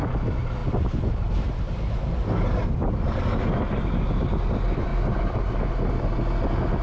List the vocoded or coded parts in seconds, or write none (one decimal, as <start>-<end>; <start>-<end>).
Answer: none